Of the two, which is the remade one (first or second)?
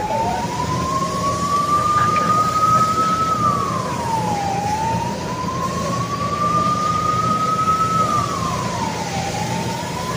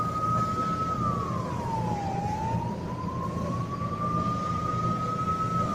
first